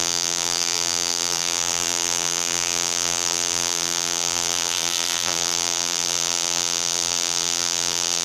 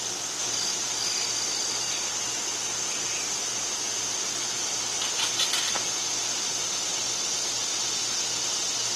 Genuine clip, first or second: second